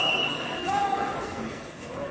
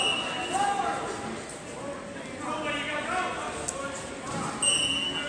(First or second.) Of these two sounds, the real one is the second